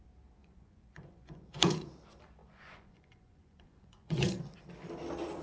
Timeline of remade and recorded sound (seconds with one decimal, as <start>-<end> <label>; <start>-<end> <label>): 0.0-0.4 recorded; 0.4-1.9 remade; 1.9-2.4 recorded; 2.4-4.4 remade; 4.4-5.4 recorded